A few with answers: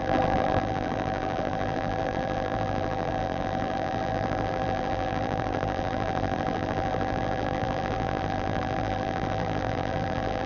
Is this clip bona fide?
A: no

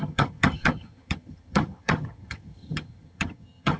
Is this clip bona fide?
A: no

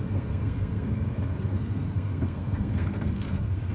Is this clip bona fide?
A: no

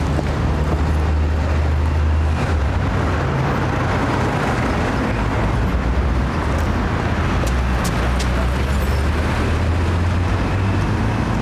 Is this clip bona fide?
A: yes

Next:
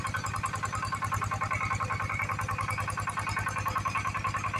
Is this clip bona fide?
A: yes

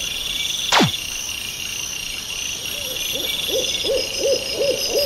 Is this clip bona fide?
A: yes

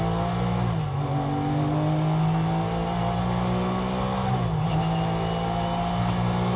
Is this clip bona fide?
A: yes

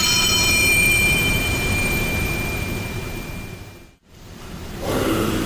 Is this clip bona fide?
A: no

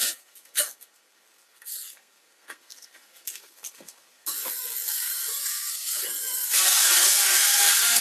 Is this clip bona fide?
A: no